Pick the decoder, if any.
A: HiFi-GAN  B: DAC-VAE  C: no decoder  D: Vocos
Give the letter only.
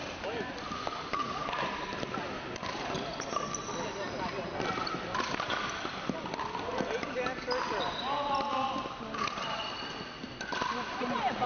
C